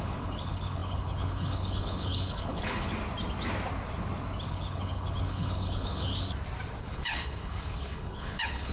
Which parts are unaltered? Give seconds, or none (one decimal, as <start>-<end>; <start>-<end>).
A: 2.9-4.5; 6.1-6.8

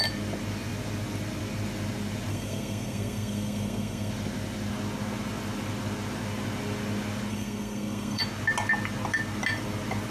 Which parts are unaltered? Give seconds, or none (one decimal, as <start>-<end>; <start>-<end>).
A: 0.0-2.3; 4.1-7.3; 8.2-10.1

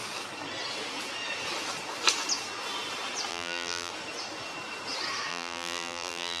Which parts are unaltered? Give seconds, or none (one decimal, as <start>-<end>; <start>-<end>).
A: 0.0-3.3; 3.9-5.3

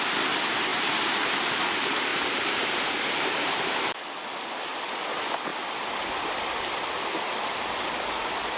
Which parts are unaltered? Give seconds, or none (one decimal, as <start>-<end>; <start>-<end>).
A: 0.0-0.7; 1.2-2.1; 4.0-8.6

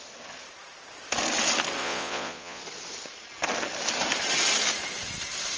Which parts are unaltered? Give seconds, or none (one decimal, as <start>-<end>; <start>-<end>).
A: 0.0-1.8; 2.6-5.6

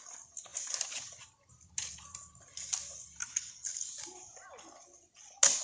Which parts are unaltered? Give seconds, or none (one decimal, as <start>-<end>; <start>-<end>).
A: 0.0-3.2; 3.9-5.6

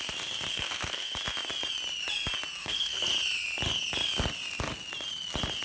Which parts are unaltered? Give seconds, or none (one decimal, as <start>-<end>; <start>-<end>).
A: 0.0-0.5; 1.2-2.6; 3.1-5.6

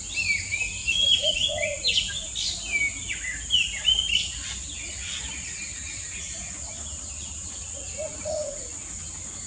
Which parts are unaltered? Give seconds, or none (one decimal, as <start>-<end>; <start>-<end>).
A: 0.0-0.8; 2.3-8.1; 8.9-9.5